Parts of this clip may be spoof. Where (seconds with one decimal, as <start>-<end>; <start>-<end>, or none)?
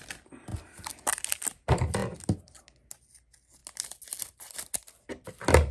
none